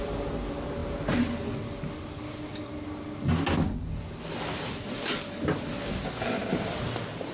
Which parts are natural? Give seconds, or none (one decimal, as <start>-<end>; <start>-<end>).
0.0-7.3